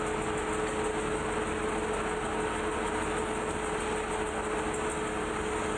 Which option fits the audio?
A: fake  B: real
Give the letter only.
B